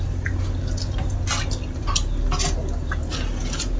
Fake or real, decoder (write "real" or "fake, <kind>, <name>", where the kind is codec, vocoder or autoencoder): real